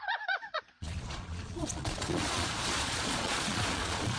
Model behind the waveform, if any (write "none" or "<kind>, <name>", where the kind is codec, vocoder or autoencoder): vocoder, Vocos